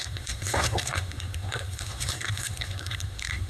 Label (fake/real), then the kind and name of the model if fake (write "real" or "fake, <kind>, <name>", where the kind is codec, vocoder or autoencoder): fake, codec, SNAC